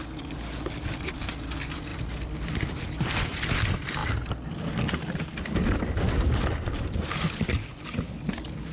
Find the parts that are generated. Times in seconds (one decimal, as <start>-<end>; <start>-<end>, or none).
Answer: none